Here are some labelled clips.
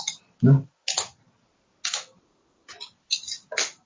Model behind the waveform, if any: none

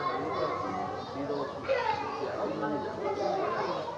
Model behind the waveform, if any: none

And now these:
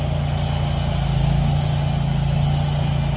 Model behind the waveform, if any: none